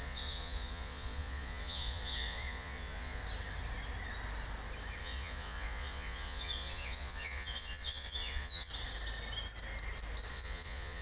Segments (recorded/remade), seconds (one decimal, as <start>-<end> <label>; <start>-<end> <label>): 0.0-3.2 remade; 3.2-5.0 recorded; 5.0-8.7 remade; 8.7-10.3 recorded; 10.3-11.0 remade

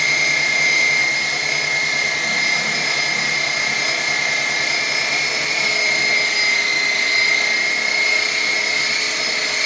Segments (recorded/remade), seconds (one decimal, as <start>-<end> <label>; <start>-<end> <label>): 0.0-9.7 recorded

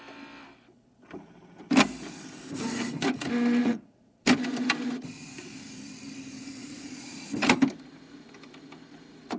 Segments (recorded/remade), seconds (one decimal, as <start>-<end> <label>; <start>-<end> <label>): 0.0-3.6 recorded; 3.6-4.2 remade; 4.2-6.6 recorded; 6.6-7.3 remade; 7.3-9.4 recorded

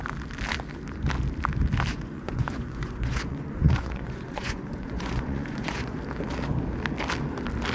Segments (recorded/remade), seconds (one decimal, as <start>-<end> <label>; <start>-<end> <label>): 0.0-1.9 recorded; 1.9-6.0 remade; 6.0-7.7 recorded

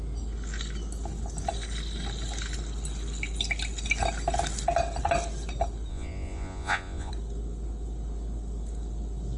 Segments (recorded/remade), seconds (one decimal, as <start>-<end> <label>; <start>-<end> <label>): 0.0-5.9 recorded; 5.9-7.1 remade; 7.1-9.4 recorded